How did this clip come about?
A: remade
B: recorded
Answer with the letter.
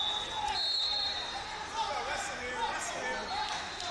B